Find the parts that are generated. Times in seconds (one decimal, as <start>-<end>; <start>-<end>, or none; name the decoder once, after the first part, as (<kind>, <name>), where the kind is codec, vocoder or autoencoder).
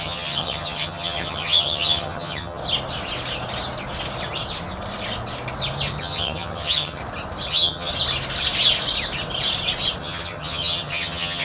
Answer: 0.0-2.6 (vocoder, HiFi-GAN); 6.0-7.0; 7.5-7.9; 10.0-11.4